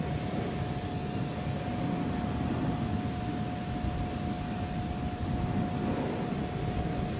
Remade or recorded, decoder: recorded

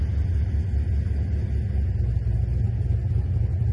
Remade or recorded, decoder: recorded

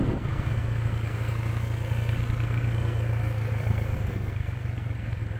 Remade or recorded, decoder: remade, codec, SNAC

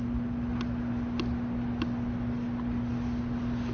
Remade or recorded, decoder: recorded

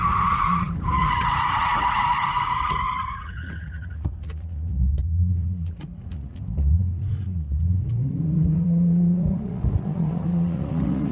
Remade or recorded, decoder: remade, vocoder, Vocos